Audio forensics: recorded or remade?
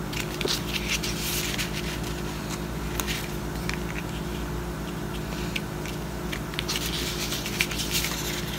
recorded